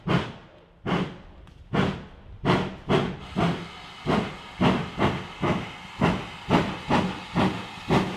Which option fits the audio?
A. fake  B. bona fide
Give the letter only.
B